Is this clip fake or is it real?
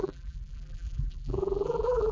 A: fake